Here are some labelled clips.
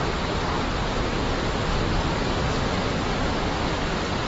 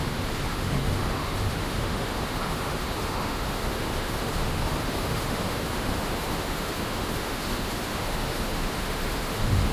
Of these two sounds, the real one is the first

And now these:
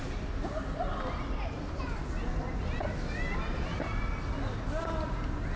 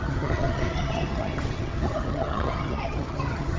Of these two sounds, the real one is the first